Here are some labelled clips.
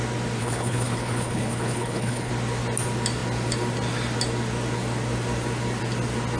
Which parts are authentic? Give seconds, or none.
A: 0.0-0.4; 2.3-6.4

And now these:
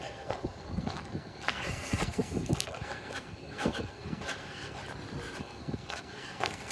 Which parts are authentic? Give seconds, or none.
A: 4.8-5.4

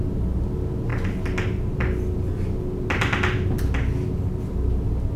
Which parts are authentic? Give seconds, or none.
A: 0.0-5.2

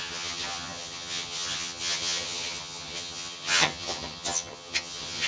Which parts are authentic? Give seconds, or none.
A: none

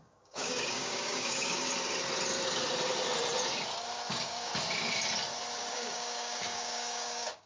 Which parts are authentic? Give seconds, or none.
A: 1.7-4.1; 4.5-5.7

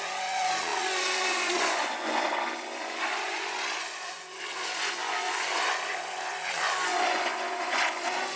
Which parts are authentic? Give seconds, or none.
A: none